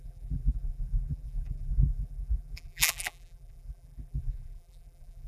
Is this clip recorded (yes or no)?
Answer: no